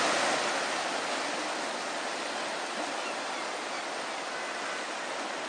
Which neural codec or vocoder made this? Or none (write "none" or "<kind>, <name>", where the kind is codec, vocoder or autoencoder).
none